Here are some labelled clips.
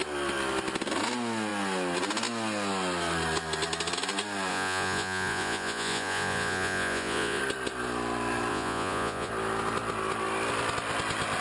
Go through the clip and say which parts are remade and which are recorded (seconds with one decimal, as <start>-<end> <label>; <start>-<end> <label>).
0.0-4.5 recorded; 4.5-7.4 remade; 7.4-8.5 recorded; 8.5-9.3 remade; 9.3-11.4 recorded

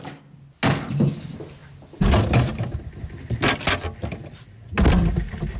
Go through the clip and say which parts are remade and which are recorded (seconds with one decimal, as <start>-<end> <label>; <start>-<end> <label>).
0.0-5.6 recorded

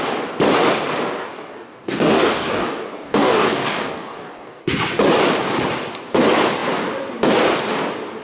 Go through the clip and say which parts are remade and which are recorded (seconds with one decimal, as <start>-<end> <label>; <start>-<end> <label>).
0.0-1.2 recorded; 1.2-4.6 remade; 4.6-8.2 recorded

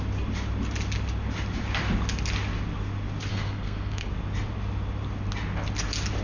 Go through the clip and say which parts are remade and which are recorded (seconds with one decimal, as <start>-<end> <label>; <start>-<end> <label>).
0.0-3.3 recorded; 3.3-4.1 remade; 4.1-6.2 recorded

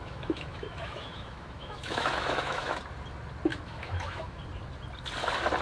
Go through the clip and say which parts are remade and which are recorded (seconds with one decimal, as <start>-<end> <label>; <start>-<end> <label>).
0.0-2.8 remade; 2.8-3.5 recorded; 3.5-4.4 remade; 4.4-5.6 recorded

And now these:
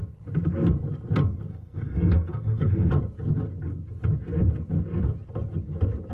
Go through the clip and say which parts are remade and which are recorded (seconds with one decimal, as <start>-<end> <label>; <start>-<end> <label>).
0.0-1.5 recorded; 1.5-2.9 remade; 2.9-6.1 recorded